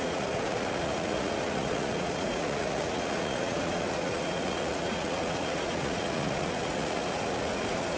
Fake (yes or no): yes